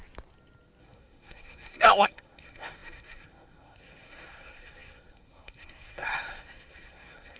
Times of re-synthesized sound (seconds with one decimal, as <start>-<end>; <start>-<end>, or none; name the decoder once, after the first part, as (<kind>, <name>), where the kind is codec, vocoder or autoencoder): 0.8-7.4 (codec, SNAC)